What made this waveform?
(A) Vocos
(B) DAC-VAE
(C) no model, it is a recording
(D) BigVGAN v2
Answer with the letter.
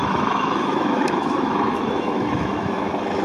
B